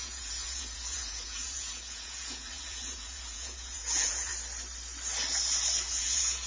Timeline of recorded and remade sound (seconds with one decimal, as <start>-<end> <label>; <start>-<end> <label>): 0.0-4.3 remade; 4.3-5.9 recorded; 5.9-6.5 remade